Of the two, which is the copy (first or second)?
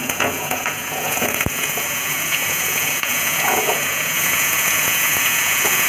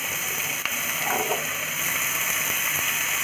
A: first